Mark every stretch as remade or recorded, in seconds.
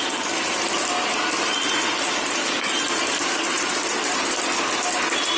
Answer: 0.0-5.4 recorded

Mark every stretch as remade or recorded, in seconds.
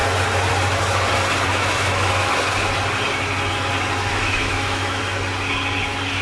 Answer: 0.0-1.5 recorded; 1.5-2.5 remade; 2.5-4.1 recorded; 4.1-5.0 remade; 5.0-6.2 recorded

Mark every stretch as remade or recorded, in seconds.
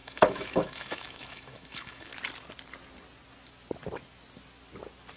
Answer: 0.0-2.1 remade; 2.1-5.2 recorded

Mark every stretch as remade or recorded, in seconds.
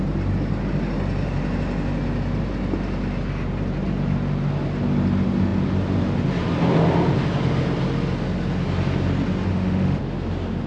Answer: 0.0-9.5 recorded; 9.5-10.0 remade; 10.0-10.7 recorded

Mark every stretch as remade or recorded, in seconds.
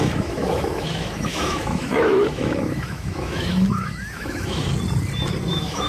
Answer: 0.0-4.7 remade; 4.7-5.5 recorded; 5.5-5.9 remade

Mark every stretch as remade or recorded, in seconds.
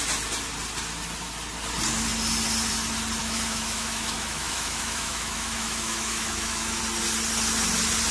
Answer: 0.0-3.2 recorded; 3.2-6.8 remade; 6.8-8.1 recorded